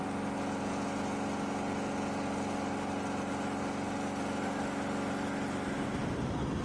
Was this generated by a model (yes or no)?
no